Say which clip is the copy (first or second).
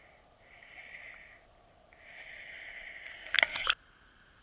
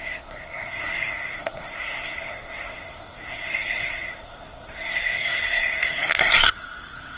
second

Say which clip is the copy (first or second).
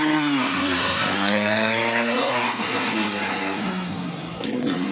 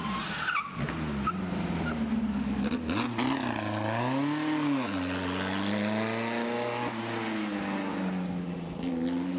first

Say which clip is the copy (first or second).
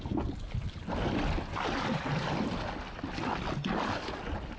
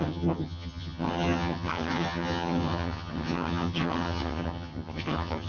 second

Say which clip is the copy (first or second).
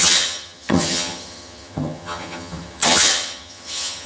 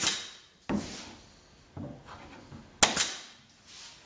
first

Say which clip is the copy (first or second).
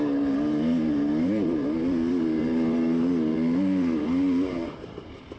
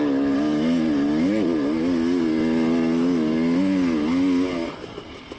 first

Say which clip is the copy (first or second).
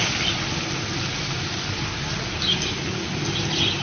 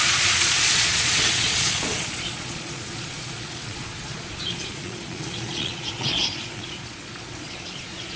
second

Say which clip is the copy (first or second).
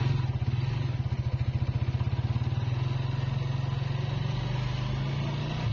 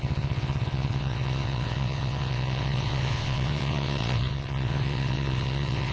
second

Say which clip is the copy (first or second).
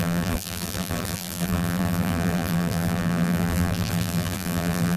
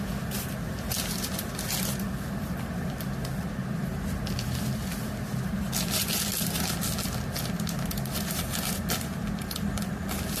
first